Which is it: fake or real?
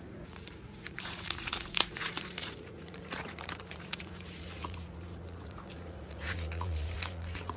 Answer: fake